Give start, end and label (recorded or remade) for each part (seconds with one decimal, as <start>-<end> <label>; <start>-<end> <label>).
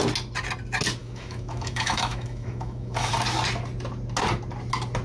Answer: 0.0-1.0 recorded; 1.0-3.1 remade; 3.1-5.0 recorded